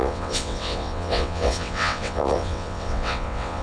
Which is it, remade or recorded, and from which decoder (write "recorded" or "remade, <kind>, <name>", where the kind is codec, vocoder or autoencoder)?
remade, vocoder, WaveNeXt